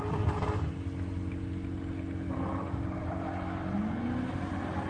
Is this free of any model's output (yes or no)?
yes